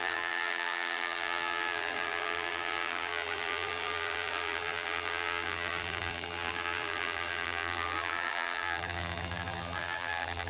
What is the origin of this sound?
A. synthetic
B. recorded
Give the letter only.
A